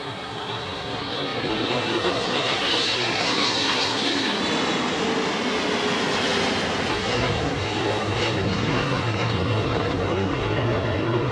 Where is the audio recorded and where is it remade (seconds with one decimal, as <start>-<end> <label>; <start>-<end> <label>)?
0.0-4.4 remade; 4.4-6.9 recorded; 6.9-11.3 remade